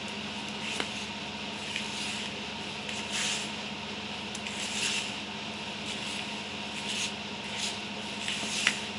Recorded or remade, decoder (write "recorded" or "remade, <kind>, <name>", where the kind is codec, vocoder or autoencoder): recorded